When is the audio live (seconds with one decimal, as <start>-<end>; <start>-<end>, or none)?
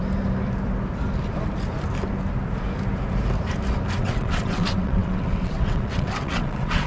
0.0-4.0